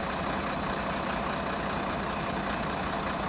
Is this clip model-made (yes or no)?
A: no